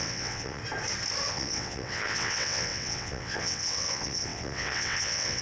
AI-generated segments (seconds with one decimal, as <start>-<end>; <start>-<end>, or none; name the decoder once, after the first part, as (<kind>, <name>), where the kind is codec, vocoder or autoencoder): 0.0-0.6 (vocoder, WaveNeXt); 1.3-5.4